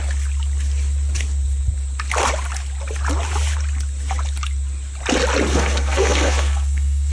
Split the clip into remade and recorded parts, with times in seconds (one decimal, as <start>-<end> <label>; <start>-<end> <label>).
0.0-5.5 recorded; 5.5-7.1 remade